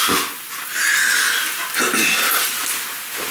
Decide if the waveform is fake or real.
real